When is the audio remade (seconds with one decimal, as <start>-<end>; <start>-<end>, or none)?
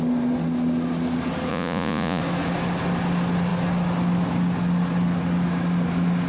1.5-2.2